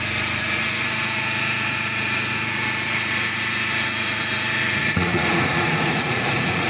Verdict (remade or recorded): remade